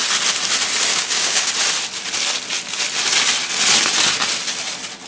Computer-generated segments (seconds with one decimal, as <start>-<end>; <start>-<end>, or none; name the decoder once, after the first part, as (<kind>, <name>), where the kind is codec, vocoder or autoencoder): 0.9-1.5 (codec, DAC)